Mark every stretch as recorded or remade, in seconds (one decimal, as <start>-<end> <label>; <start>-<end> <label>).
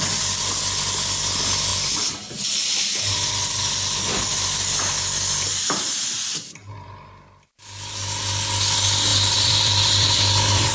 0.0-9.1 recorded; 9.1-10.7 remade